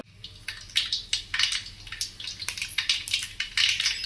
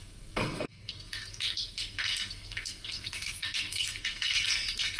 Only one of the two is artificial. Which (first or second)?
second